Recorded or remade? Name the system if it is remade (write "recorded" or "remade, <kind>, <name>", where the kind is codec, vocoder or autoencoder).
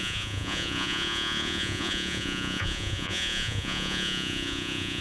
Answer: remade, vocoder, Vocos